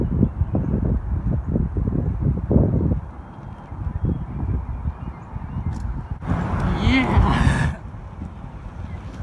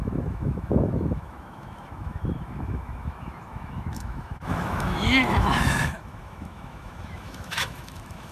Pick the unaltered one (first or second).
first